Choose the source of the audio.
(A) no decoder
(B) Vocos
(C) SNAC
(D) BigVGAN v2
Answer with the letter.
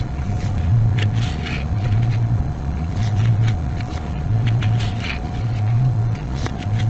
B